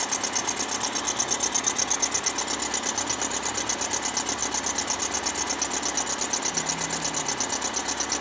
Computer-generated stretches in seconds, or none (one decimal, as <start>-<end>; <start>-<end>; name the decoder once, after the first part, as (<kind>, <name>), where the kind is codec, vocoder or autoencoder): none